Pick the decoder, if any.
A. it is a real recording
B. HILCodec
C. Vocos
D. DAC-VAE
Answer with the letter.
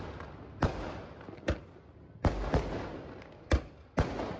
A